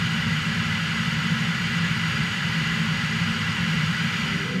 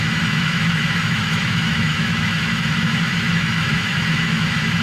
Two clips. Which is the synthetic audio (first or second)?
second